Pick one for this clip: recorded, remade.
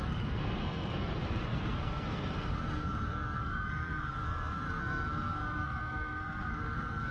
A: remade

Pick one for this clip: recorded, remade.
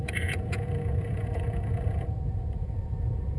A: remade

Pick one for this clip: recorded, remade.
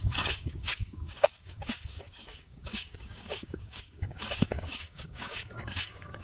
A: remade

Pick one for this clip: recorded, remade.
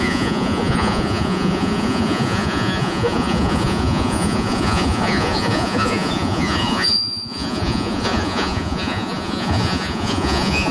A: remade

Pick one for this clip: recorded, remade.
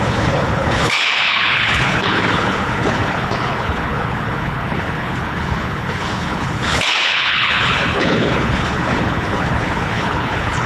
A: remade